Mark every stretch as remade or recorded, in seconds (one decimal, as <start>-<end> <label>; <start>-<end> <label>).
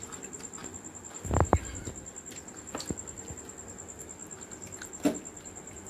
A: 0.0-5.9 recorded